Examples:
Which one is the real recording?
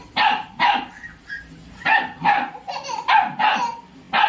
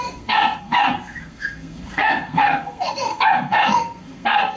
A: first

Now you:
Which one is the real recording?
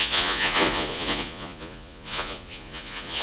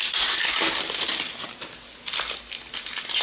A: second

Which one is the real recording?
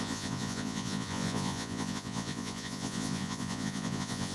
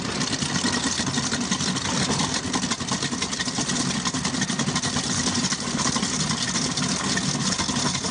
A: second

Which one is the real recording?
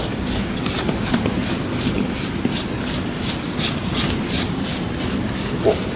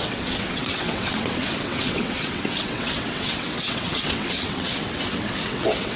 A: first